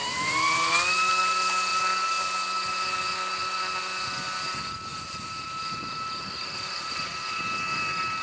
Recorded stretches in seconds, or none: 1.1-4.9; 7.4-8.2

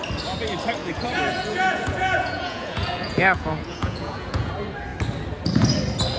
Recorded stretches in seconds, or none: 0.0-0.8; 4.5-6.2

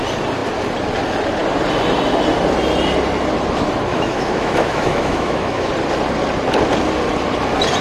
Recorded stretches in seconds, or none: 0.0-3.9; 5.7-7.8

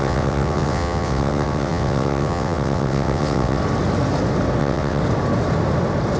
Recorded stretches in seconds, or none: 3.6-4.6; 5.0-6.2

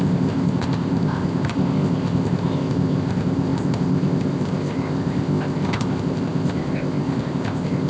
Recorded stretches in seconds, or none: none